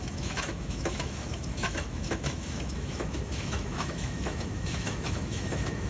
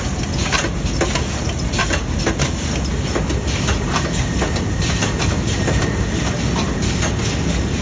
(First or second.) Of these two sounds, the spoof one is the first